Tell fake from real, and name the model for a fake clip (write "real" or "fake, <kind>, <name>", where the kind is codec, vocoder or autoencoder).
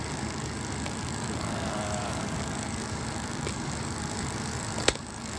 fake, codec, DAC